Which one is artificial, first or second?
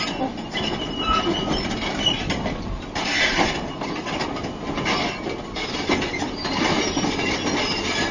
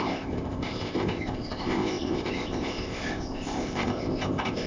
second